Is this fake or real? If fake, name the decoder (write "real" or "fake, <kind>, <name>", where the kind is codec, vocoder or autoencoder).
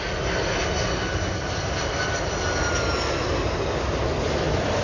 real